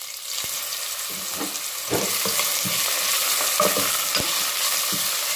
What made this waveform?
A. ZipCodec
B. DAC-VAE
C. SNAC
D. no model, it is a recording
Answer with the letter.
D